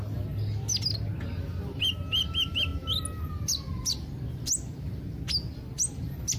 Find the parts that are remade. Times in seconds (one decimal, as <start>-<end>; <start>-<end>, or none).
none